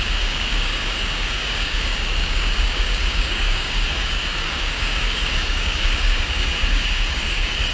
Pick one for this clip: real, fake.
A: fake